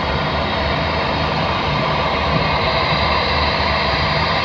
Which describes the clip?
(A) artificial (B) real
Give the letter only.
A